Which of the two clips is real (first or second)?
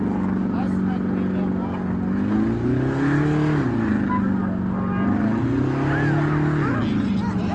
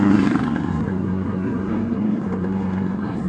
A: first